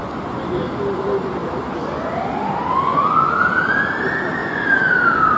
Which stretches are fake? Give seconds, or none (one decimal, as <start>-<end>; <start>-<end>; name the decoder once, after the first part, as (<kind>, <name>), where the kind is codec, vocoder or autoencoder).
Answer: 0.0-0.7 (vocoder, Vocos); 2.9-3.8; 4.4-4.9